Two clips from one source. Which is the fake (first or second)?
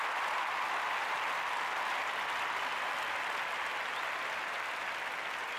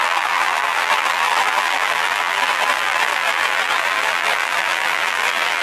second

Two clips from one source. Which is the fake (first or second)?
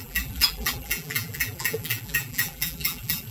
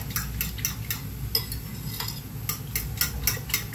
first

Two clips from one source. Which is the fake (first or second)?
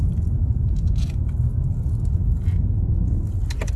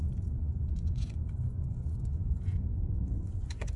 second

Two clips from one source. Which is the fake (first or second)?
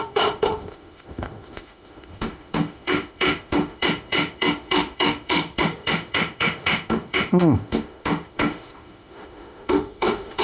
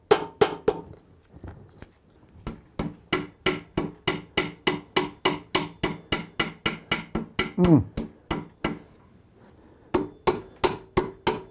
first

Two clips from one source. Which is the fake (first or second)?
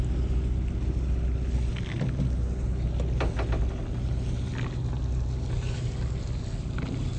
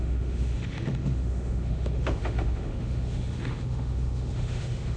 second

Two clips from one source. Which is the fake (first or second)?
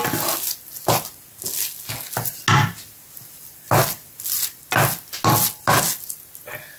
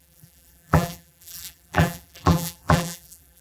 second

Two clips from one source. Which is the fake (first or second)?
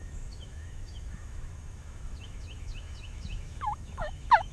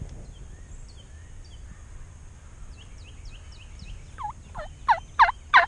first